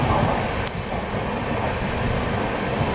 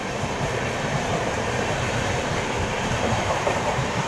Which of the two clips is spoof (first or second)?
second